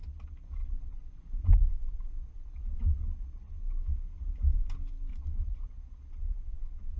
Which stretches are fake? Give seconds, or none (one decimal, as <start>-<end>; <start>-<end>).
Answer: 0.6-3.5; 5.1-7.0